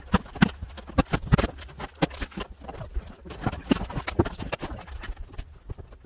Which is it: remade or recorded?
recorded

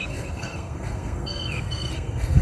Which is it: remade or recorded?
remade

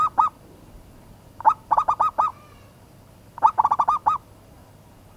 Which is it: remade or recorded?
recorded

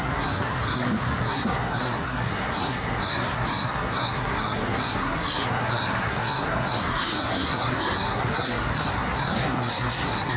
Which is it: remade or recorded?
remade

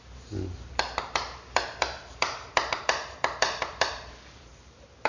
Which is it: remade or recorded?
remade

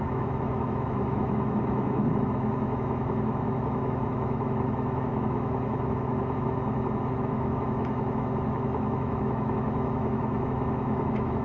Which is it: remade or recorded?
remade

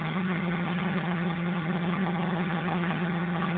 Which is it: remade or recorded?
remade